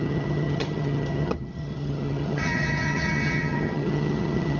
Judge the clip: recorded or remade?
remade